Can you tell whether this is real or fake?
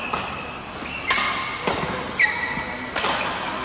real